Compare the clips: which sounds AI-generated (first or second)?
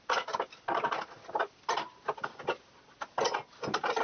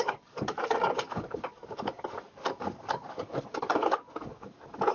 second